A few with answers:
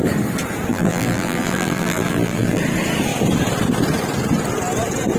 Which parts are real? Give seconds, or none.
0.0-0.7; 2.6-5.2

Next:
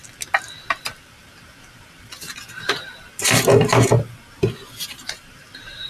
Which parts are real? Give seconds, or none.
0.0-0.8; 3.7-4.9

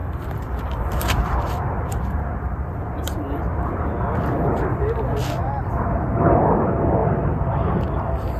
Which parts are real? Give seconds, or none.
4.0-7.0; 7.9-8.4

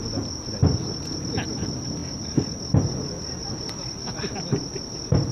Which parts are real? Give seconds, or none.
0.0-5.3

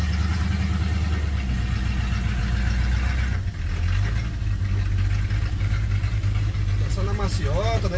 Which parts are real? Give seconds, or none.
0.5-6.0; 6.9-8.0

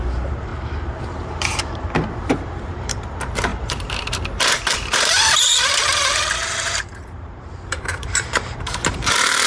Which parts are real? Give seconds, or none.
0.5-1.0